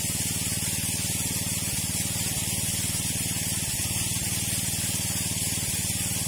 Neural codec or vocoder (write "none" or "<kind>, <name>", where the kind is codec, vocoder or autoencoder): none